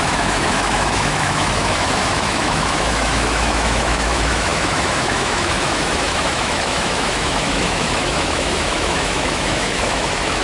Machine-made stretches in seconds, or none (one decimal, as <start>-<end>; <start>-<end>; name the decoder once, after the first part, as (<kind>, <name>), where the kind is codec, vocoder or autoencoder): 0.0-10.4 (autoencoder, DAC-VAE)